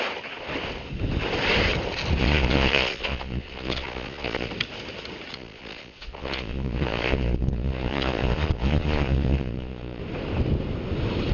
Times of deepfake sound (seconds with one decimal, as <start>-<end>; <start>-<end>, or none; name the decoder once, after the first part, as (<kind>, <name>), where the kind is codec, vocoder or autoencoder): 2.2-4.5 (vocoder, Vocos); 5.3-10.0